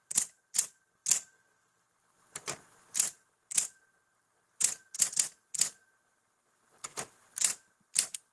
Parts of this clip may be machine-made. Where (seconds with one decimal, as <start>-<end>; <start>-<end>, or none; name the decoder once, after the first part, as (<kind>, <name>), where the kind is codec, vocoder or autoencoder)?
0.0-8.3 (vocoder, BigVGAN v2)